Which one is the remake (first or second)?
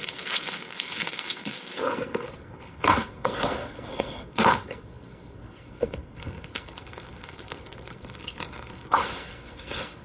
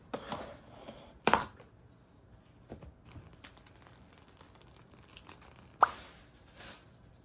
first